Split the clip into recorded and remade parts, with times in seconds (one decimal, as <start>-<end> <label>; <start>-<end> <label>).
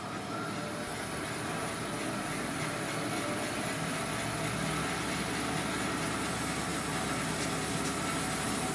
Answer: 0.0-8.7 recorded